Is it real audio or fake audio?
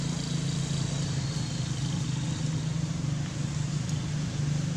real